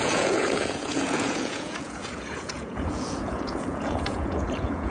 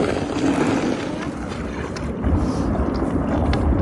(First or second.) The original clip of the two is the second